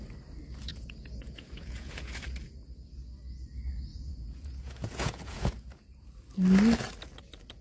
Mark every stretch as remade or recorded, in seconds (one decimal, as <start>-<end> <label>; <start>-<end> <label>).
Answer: 0.0-0.7 recorded; 0.7-2.2 remade; 2.2-3.9 recorded; 3.9-6.1 remade; 6.1-7.6 recorded